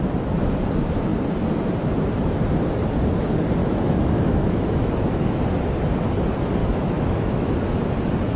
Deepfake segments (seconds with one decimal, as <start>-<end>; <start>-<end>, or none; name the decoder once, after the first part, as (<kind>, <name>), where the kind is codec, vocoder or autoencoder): 3.6-5.4 (autoencoder, DAC-VAE); 6.6-7.5